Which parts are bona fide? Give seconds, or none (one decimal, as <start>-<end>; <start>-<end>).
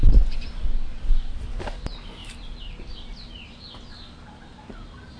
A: 0.0-5.2